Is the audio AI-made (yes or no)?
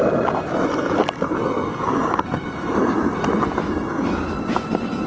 no